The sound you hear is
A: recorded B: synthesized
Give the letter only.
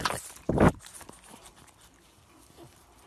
A